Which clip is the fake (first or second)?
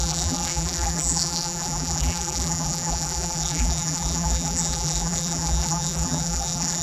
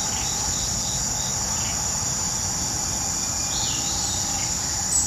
first